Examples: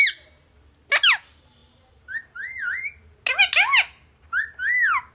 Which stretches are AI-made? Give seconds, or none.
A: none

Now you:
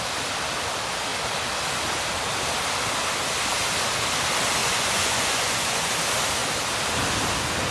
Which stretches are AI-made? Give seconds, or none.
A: 4.6-5.9

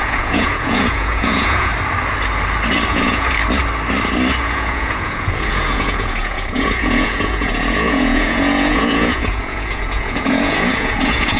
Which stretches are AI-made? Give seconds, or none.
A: 0.0-1.7; 2.9-3.4; 4.4-11.4

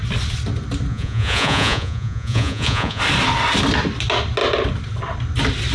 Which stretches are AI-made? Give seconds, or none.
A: 0.9-3.0

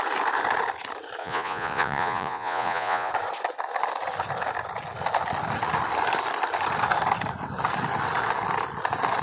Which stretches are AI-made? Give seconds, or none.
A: 1.2-3.1

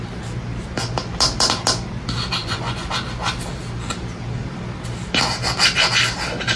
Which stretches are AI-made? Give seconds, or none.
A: 2.4-2.9

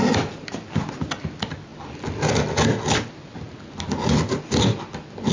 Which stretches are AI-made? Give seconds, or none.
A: none